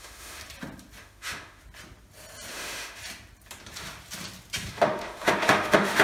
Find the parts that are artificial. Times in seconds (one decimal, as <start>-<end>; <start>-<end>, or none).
0.0-0.4; 1.0-1.6; 2.5-3.0; 4.7-6.0